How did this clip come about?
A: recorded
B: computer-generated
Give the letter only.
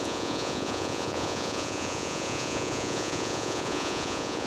B